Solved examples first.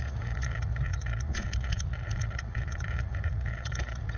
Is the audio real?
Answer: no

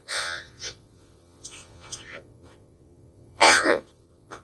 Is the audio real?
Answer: no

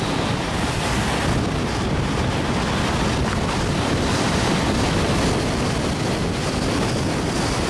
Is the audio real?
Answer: yes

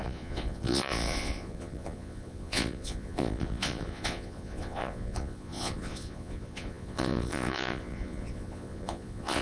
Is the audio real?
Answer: no